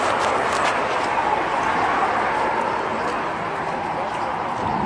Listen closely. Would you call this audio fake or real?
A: real